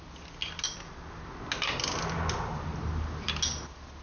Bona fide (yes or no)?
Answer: yes